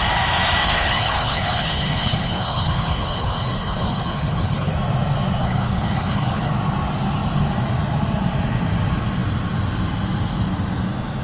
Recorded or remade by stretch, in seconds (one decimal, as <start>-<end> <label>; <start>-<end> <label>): 0.0-0.6 recorded; 0.6-4.7 remade; 4.7-5.4 recorded; 5.4-6.5 remade; 6.5-11.2 recorded